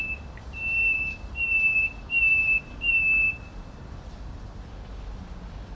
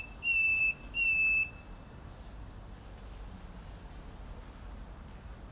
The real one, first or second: second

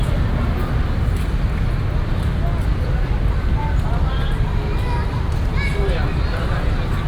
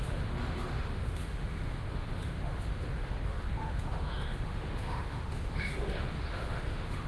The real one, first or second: first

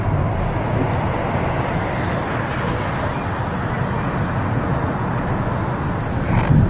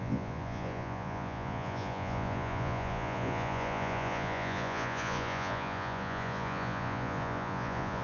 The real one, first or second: first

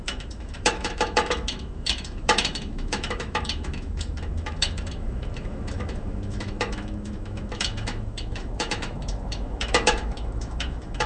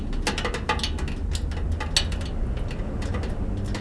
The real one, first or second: second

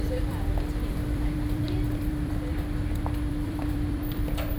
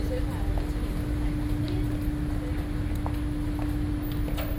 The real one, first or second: second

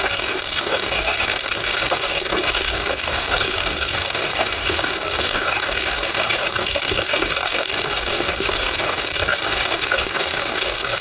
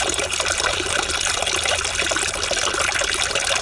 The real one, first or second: second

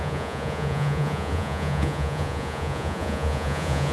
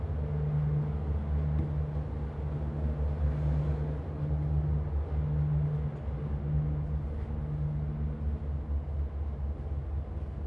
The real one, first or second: second